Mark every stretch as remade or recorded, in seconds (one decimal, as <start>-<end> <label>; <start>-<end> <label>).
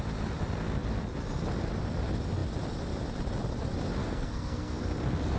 0.0-4.0 recorded; 4.0-4.8 remade; 4.8-5.4 recorded